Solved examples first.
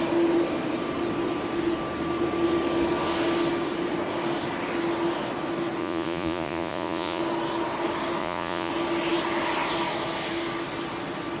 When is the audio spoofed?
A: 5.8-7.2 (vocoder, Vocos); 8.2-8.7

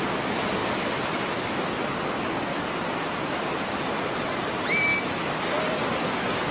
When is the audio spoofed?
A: none

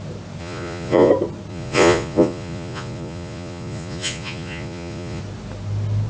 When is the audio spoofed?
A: 0.4-1.1 (vocoder, Vocos); 1.5-5.2

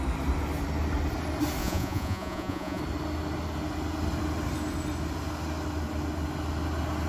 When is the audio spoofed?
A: 1.6-2.8 (vocoder, Vocos)

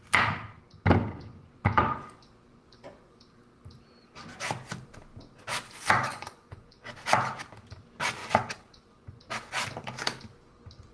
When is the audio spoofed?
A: 1.3-3.2 (vocoder, Vocos); 6.1-6.9; 8.2-9.2

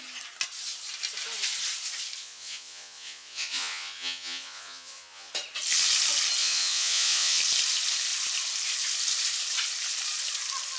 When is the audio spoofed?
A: 2.2-5.3 (vocoder, Vocos); 6.4-7.4

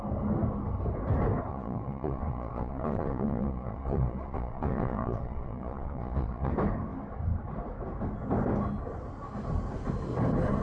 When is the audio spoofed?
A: 1.5-6.5 (vocoder, Vocos)